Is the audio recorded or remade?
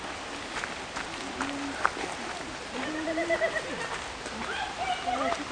recorded